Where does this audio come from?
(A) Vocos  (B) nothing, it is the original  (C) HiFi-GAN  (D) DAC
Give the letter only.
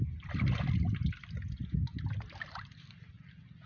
B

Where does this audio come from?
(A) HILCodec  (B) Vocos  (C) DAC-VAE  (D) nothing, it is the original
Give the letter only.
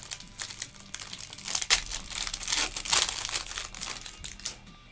D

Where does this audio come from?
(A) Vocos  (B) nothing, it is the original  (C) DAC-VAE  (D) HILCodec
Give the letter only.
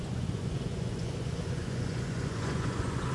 A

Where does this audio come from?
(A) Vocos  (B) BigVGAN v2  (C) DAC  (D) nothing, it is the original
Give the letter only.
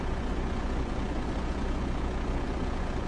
A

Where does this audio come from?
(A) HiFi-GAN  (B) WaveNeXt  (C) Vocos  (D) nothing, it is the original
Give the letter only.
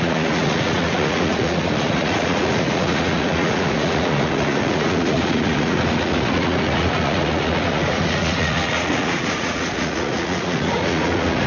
C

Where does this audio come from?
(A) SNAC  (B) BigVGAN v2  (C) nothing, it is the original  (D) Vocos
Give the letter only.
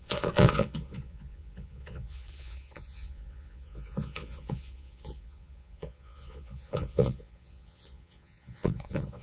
D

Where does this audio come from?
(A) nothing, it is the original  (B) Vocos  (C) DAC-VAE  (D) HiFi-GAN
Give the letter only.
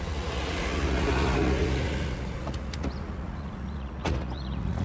B